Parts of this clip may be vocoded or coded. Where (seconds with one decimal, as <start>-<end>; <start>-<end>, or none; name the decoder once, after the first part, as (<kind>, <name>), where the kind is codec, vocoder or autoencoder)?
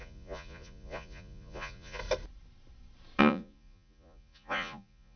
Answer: 0.0-2.0 (vocoder, Vocos); 3.2-5.2